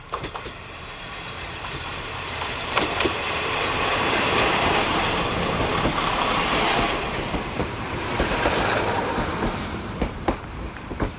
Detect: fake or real fake